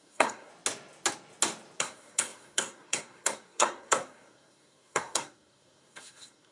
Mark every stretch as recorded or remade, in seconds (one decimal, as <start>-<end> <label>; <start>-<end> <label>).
0.0-0.5 remade; 0.5-1.8 recorded; 1.8-6.5 remade

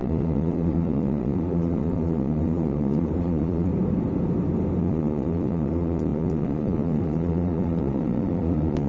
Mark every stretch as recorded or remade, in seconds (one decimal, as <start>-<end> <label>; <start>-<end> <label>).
0.0-3.7 remade; 3.7-4.8 recorded; 4.8-8.9 remade

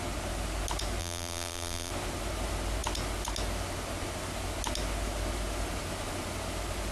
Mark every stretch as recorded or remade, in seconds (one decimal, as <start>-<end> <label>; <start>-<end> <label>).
0.0-1.0 recorded; 1.0-1.9 remade; 1.9-6.9 recorded

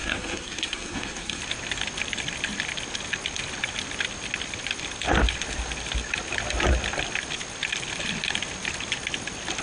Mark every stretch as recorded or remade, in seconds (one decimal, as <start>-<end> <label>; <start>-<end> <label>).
0.0-1.4 remade; 1.4-9.6 recorded

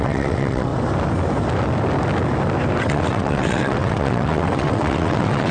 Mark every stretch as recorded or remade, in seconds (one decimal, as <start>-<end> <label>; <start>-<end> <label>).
0.0-0.7 remade; 0.7-2.8 recorded; 2.8-5.5 remade